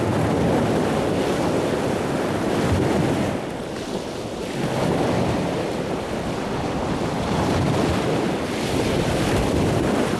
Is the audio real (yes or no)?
yes